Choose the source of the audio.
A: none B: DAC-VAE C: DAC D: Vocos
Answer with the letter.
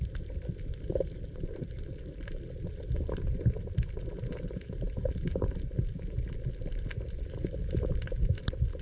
A